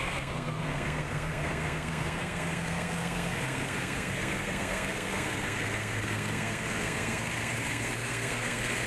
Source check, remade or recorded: remade